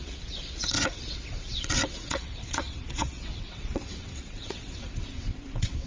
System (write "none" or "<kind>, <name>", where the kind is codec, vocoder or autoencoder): vocoder, WaveNeXt